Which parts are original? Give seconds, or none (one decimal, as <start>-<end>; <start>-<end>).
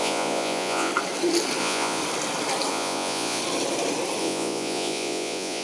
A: 0.9-1.6; 2.0-2.7; 3.4-4.2